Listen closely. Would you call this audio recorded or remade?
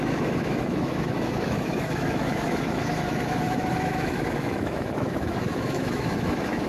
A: remade